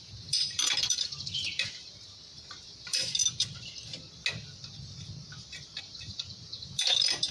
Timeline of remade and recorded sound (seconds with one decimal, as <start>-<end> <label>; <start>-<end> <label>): 0.0-3.2 remade; 3.2-5.8 recorded; 5.8-7.3 remade